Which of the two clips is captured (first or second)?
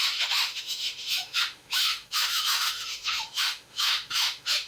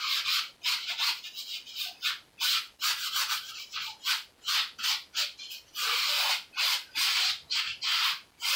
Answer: second